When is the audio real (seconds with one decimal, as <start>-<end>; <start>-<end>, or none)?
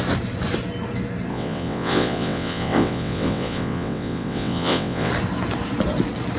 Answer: 0.0-1.3; 5.1-6.4